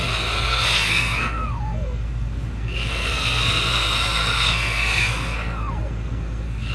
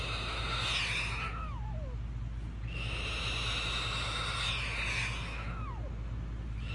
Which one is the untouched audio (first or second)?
second